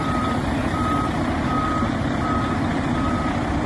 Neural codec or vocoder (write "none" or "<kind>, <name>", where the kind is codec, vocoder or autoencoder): vocoder, BigVGAN v2